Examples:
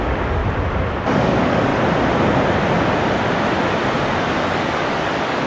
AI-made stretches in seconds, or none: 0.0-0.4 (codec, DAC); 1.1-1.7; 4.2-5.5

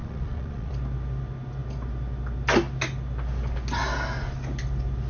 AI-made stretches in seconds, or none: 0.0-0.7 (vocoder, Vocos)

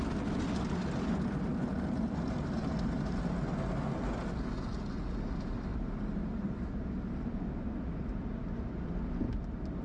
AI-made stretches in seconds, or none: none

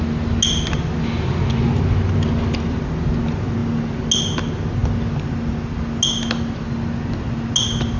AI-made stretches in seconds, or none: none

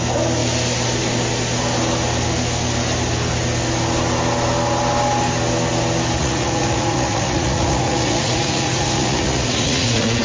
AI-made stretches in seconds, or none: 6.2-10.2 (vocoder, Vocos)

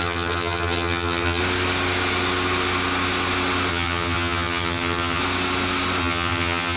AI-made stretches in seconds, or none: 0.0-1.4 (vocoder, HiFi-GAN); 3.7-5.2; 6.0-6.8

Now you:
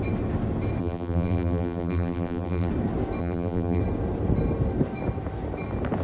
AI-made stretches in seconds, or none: 0.8-2.7 (vocoder, BigVGAN v2); 3.2-3.8

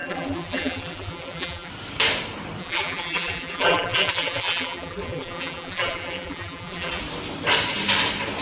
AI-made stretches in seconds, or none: 0.0-1.7 (vocoder, BigVGAN v2); 2.6-7.0